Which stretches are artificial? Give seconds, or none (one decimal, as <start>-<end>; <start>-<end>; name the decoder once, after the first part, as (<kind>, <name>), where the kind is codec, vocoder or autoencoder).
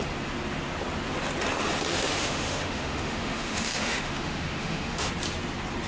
1.9-5.1 (autoencoder, DAC-VAE)